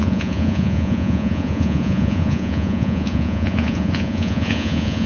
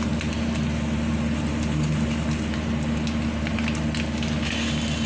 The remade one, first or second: first